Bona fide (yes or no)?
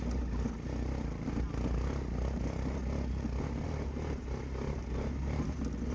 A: yes